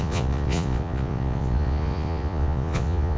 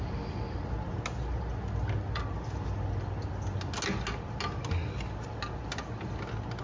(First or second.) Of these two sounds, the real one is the second